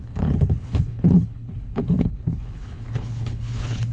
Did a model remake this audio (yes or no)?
yes